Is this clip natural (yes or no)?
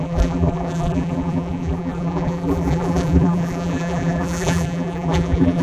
no